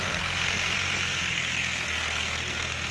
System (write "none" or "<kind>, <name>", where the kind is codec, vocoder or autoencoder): codec, SNAC